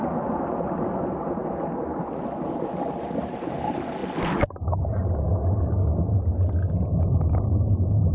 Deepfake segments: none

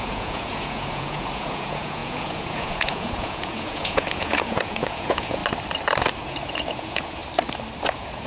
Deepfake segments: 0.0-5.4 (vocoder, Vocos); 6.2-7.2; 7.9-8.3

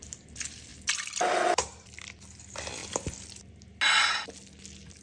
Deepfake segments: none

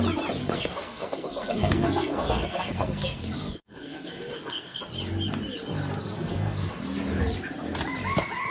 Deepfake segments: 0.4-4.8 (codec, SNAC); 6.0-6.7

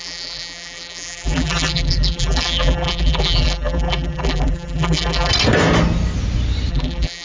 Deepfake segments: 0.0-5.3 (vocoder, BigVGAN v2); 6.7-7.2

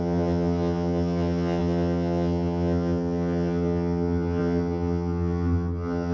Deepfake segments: 0.0-6.1 (vocoder, HiFi-GAN)